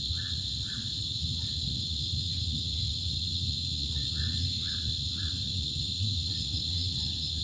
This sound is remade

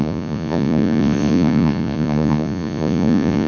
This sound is remade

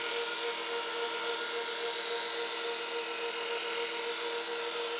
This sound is recorded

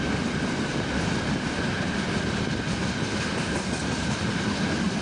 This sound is recorded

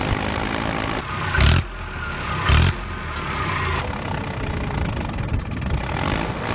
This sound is recorded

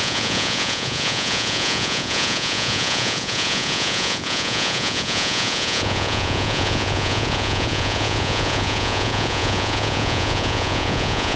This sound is remade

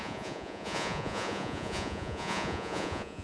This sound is remade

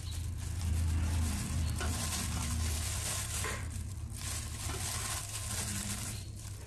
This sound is recorded